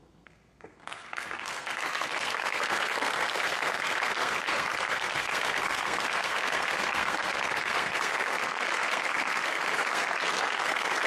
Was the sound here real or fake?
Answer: fake